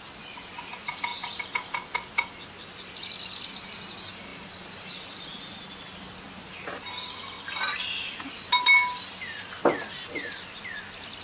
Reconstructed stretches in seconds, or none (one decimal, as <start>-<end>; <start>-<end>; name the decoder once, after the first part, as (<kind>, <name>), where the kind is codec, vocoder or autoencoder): none